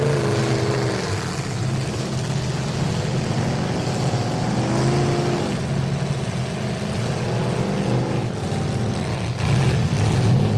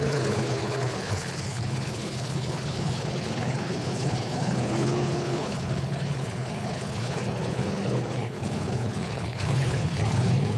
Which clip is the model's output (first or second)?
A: second